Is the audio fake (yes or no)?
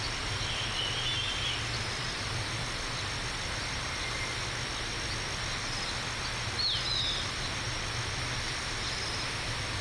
no